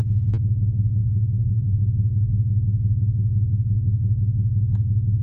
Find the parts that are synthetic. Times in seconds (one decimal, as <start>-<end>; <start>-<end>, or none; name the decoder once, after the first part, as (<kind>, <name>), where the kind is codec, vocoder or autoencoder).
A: 1.0-1.8 (vocoder, Vocos)